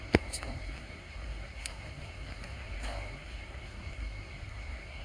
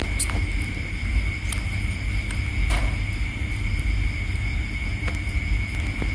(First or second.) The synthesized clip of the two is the first